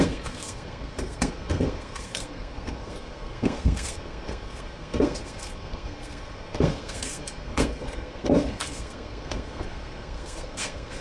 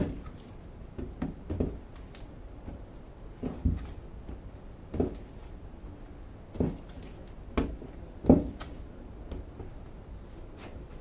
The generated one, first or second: first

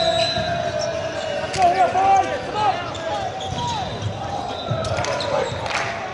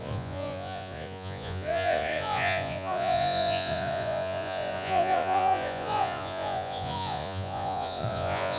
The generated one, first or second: second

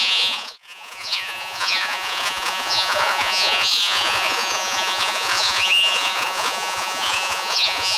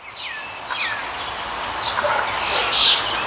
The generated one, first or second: first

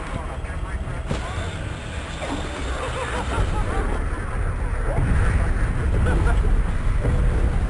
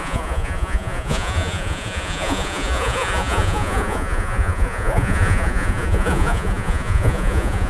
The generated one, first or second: second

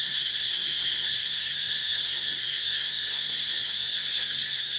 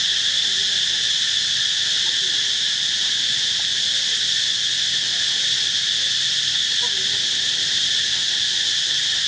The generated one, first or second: first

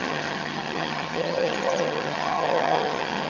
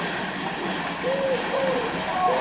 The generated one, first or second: first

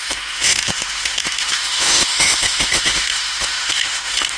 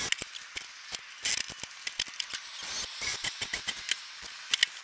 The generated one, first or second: first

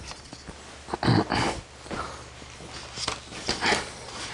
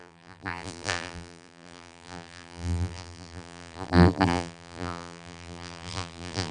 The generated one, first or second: second